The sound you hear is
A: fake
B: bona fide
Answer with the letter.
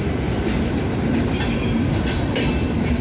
B